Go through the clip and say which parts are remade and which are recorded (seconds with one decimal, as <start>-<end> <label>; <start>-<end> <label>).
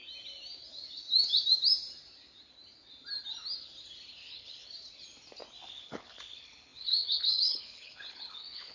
0.0-4.1 recorded; 4.1-4.7 remade; 4.7-5.7 recorded; 5.7-8.7 remade